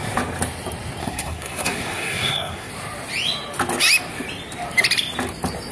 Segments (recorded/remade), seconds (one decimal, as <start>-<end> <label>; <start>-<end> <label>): 0.0-1.0 recorded; 1.0-2.7 remade; 2.7-5.7 recorded